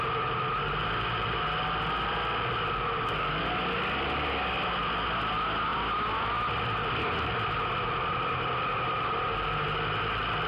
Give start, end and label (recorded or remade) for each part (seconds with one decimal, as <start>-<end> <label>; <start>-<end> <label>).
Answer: 0.0-10.5 recorded